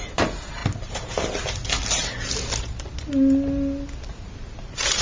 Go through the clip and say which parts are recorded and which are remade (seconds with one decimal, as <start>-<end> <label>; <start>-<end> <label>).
0.0-0.6 recorded; 0.6-1.2 remade; 1.2-2.0 recorded; 2.0-2.9 remade; 2.9-4.1 recorded; 4.1-5.0 remade